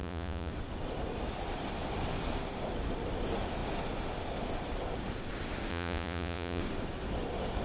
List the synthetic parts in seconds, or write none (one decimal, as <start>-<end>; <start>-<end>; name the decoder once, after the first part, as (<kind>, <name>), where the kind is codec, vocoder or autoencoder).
0.0-0.5 (vocoder, Vocos); 5.7-6.6